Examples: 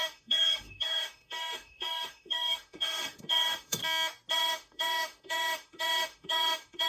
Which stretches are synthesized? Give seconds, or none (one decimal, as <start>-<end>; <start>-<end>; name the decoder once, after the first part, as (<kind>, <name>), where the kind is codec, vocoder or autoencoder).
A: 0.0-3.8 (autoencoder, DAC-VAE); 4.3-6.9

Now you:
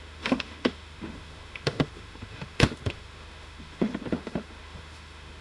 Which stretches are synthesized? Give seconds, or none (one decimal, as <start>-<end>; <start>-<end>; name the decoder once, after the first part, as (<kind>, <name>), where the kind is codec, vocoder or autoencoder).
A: 0.0-5.4 (autoencoder, DAC-VAE)

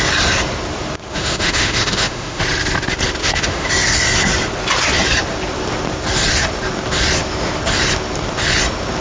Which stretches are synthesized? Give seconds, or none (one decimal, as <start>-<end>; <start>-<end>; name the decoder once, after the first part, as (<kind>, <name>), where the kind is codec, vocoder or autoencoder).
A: 1.1-2.4 (autoencoder, DAC-VAE); 3.2-3.7

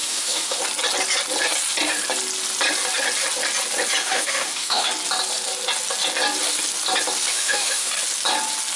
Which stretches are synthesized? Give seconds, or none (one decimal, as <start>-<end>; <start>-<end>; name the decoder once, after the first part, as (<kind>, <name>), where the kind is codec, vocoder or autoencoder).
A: 0.0-0.6 (autoencoder, DAC-VAE); 4.0-4.9; 7.3-7.9

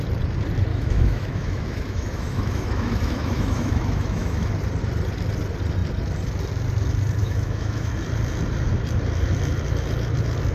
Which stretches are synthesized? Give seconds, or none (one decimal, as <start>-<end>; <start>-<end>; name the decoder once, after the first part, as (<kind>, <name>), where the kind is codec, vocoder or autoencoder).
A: 0.7-4.5 (autoencoder, DAC-VAE); 7.2-7.9

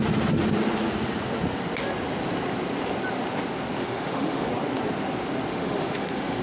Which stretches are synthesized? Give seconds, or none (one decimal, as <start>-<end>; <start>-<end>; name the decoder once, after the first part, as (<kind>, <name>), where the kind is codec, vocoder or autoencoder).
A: 3.8-4.5 (autoencoder, DAC-VAE); 5.5-6.4